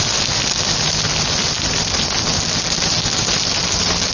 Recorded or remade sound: recorded